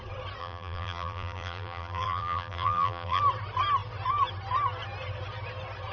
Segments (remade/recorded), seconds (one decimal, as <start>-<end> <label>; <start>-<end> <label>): 0.0-0.4 recorded; 0.4-3.2 remade; 3.2-5.9 recorded